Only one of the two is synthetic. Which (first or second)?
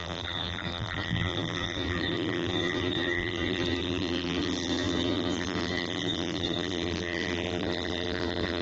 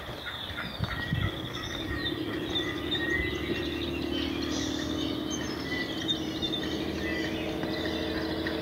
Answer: first